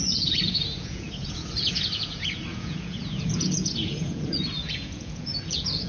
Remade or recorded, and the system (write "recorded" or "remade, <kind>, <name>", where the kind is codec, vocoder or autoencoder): remade, vocoder, Vocos